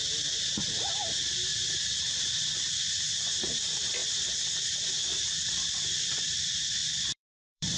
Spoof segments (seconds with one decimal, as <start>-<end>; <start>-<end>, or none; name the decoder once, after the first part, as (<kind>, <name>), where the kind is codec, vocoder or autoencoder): 0.0-0.8 (vocoder, BigVGAN v2); 1.5-2.0; 4.0-5.7; 6.8-7.8